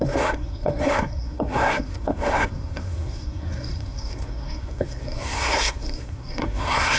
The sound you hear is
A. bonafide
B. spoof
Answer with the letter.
B